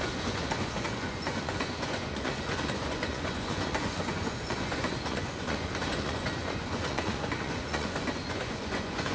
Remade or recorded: remade